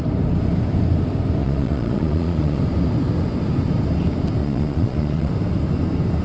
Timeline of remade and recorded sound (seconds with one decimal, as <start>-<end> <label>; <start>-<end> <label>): 0.0-1.4 recorded; 1.4-2.6 remade; 2.6-4.4 recorded; 4.4-5.3 remade; 5.3-6.2 recorded